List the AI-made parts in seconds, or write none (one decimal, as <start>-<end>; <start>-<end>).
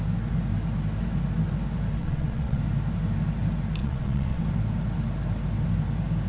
2.0-2.6; 3.8-4.4